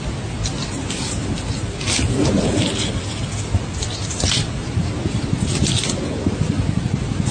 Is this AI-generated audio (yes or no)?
no